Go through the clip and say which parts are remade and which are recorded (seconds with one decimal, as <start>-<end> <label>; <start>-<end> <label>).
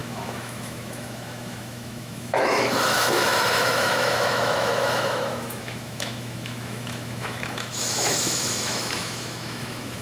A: 0.0-10.0 remade